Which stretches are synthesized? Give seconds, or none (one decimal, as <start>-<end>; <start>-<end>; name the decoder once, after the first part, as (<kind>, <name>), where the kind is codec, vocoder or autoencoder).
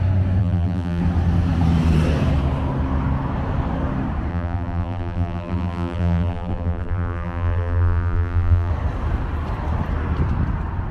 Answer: 0.4-1.0 (vocoder, BigVGAN v2); 4.3-8.7